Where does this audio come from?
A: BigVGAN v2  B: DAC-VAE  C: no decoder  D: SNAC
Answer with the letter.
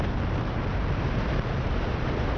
A